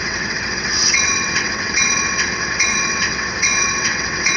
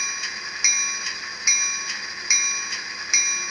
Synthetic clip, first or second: first